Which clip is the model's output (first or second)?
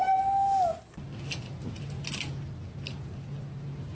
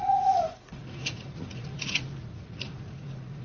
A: second